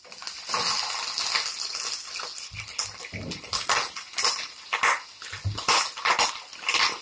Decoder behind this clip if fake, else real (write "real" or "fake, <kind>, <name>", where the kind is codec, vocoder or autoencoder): real